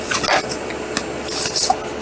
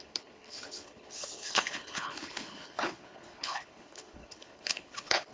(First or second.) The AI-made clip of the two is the second